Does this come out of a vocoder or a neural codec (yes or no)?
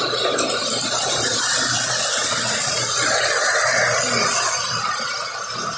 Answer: no